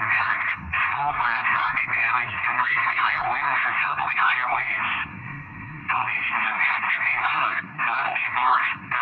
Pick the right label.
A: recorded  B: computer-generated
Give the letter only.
B